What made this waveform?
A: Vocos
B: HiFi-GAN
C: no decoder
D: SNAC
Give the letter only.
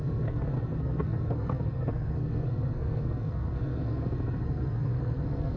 D